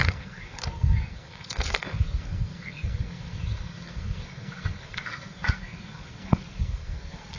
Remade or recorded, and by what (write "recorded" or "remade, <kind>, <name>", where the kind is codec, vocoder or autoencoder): remade, codec, SNAC